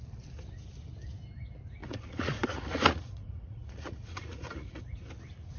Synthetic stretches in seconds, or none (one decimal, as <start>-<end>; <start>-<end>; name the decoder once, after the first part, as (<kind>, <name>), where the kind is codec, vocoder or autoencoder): 1.8-4.8 (vocoder, Vocos)